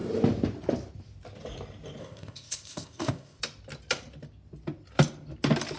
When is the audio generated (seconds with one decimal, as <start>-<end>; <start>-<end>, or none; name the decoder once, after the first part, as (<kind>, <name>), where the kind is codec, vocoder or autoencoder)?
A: 2.0-3.4 (codec, ZipCodec)